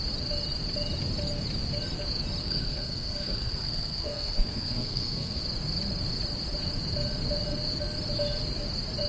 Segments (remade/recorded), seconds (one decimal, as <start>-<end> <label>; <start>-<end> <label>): 0.0-2.4 recorded; 2.4-5.4 remade; 5.4-9.1 recorded